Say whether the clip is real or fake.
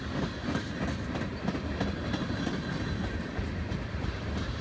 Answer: real